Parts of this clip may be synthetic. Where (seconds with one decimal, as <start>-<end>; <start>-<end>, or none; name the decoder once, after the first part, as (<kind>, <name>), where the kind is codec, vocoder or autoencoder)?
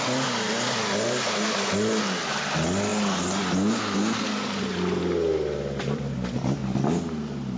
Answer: none